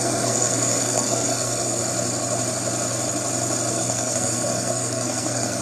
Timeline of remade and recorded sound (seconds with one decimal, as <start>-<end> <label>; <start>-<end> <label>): 0.0-1.8 remade; 1.8-3.7 recorded; 3.7-5.6 remade